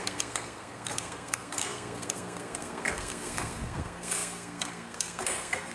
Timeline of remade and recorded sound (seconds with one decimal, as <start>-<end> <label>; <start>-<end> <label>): 0.0-5.7 remade